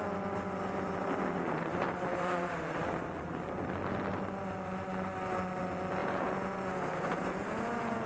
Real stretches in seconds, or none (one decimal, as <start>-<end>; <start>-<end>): 0.0-2.1; 2.6-6.0